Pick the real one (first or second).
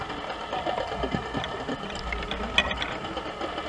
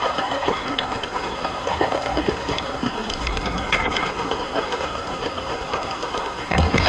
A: first